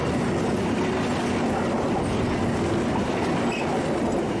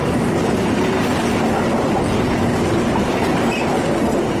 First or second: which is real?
first